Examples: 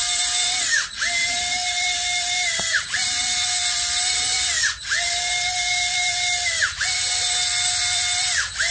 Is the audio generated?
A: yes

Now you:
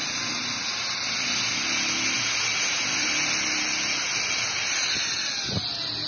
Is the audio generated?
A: no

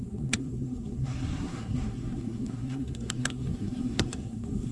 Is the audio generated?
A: yes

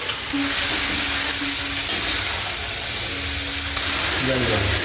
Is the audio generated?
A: no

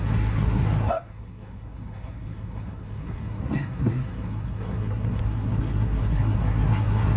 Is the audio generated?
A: yes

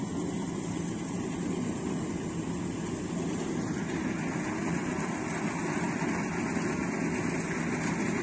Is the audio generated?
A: no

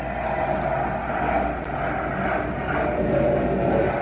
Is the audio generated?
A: no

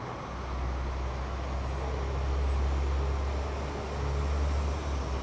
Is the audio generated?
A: no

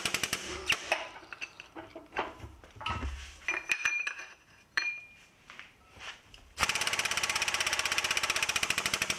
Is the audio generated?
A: yes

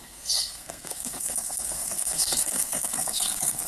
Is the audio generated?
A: yes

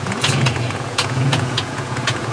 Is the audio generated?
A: yes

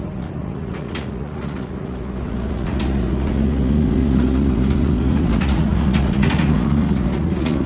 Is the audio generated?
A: yes